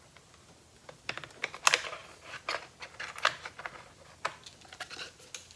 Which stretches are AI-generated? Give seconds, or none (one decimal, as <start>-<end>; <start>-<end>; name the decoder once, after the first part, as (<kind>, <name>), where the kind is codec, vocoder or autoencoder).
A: 0.7-1.4 (vocoder, BigVGAN v2)